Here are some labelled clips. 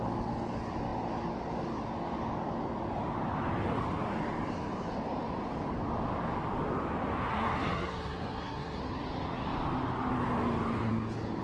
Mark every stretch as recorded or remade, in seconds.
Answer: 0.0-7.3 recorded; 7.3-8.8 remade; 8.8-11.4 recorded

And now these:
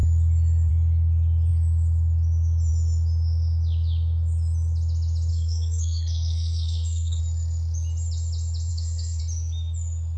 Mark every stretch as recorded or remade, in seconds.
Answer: 0.0-5.3 recorded; 5.3-7.2 remade; 7.2-8.7 recorded; 8.7-9.2 remade; 9.2-10.2 recorded

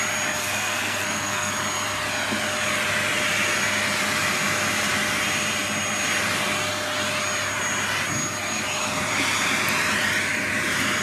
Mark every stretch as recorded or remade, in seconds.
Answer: 0.0-0.4 recorded; 0.4-1.5 remade; 1.5-11.0 recorded

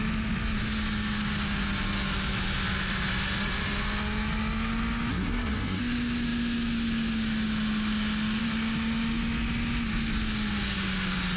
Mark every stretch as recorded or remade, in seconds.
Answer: 0.0-5.1 recorded; 5.1-5.8 remade; 5.8-11.4 recorded

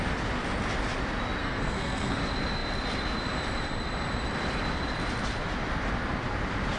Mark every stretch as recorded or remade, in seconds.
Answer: 0.0-1.4 recorded; 1.4-2.2 remade; 2.2-6.8 recorded

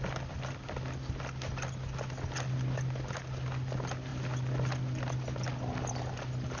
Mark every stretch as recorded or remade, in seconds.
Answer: 0.0-6.6 recorded